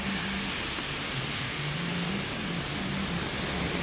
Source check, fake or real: real